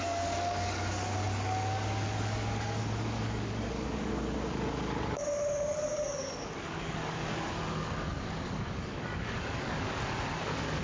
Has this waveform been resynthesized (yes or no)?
yes